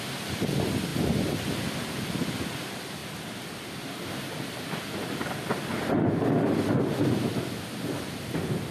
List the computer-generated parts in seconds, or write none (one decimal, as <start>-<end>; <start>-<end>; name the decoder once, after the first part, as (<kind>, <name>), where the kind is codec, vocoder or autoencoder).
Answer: none